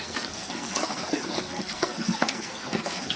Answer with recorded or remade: remade